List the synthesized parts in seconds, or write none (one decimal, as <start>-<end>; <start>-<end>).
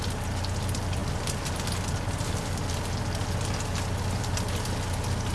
none